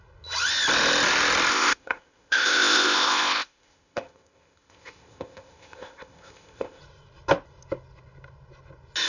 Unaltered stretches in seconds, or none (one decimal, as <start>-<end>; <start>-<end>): 0.0-1.5; 6.8-9.1